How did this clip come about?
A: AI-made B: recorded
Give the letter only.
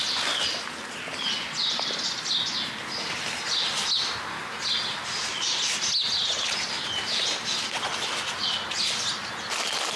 B